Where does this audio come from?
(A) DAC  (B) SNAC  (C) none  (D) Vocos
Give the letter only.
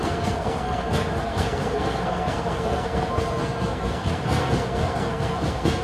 B